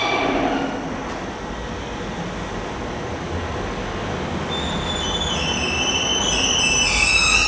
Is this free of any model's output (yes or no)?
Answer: yes